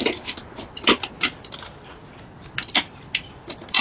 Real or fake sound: real